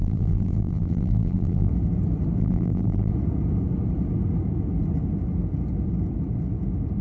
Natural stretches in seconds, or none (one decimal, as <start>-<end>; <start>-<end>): 1.7-2.4; 3.1-7.0